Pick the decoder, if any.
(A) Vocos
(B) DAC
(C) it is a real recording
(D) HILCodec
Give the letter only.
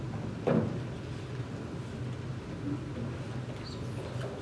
C